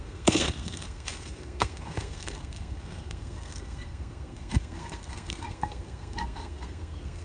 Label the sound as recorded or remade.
remade